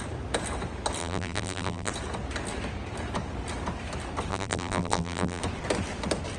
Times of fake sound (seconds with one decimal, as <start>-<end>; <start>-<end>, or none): 1.0-1.9; 4.3-5.4